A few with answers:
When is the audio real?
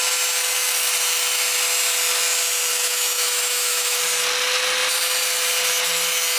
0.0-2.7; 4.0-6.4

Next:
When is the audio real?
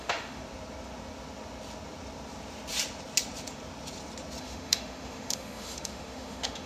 0.4-4.4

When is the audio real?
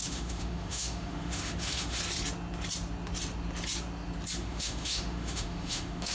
2.0-4.4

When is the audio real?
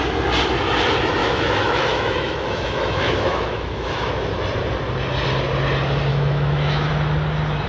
0.0-1.2; 4.1-6.1; 6.9-7.7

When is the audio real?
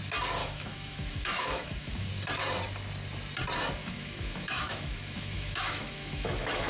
0.0-0.4; 2.1-3.8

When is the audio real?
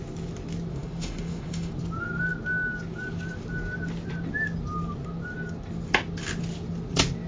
0.0-0.7; 1.7-7.3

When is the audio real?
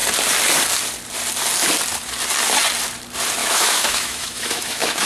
0.0-3.4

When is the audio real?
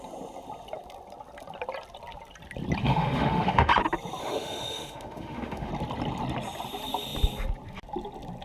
0.0-2.8; 3.7-4.2; 5.7-8.4